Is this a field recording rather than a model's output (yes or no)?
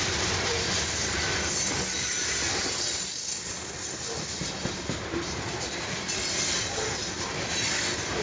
yes